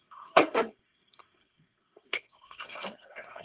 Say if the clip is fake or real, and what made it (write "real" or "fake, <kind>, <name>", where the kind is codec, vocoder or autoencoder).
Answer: fake, codec, SNAC